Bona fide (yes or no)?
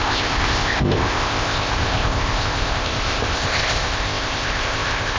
no